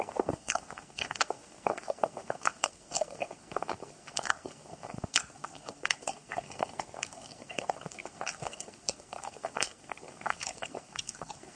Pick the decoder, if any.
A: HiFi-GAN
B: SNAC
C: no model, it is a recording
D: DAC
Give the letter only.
B